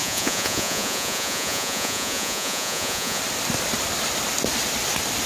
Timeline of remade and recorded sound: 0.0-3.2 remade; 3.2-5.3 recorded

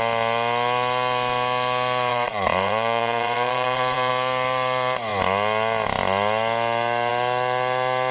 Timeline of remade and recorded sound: 0.0-2.1 recorded; 2.1-4.1 remade; 4.1-8.1 recorded

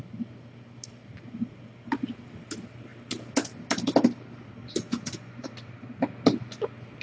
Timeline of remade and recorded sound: 0.0-4.6 recorded; 4.6-5.5 remade; 5.5-7.0 recorded